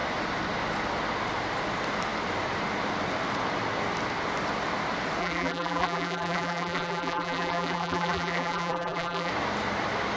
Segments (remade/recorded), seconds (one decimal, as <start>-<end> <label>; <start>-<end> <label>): 0.0-5.2 recorded; 5.2-9.3 remade; 9.3-10.2 recorded